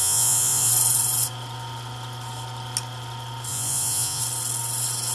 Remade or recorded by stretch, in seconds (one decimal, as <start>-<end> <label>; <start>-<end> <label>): 0.0-0.7 remade; 0.7-3.5 recorded; 3.5-4.2 remade; 4.2-5.1 recorded